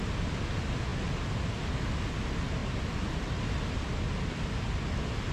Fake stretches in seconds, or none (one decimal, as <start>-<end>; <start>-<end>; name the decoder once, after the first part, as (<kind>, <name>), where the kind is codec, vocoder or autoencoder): none